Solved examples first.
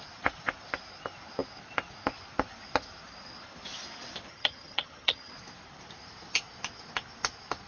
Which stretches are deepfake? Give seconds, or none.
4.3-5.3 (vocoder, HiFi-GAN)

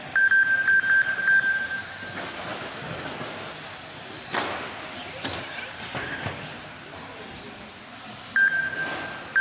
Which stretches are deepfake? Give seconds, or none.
none

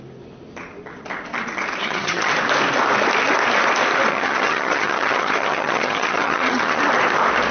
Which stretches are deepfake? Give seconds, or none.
1.8-2.3 (vocoder, HiFi-GAN); 4.1-6.8

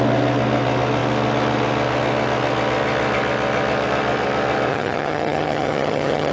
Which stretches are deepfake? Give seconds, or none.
4.7-6.3 (vocoder, HiFi-GAN)

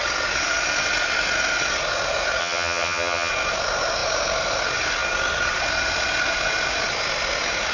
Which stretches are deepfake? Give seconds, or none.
2.4-3.3 (vocoder, HiFi-GAN)

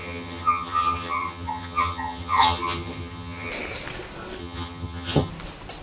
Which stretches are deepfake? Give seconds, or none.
0.0-3.5 (vocoder, HiFi-GAN); 4.4-5.3

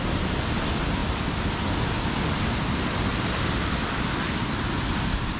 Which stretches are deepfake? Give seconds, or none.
none

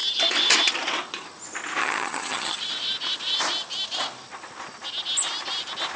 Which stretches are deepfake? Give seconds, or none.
1.8-2.6 (vocoder, HiFi-GAN)